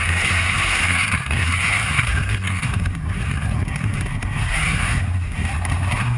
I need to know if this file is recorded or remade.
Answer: remade